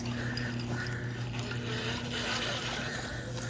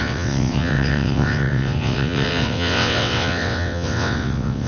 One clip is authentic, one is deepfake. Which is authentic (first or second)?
first